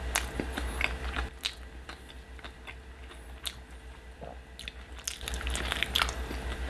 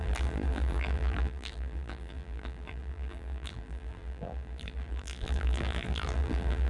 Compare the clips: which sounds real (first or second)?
first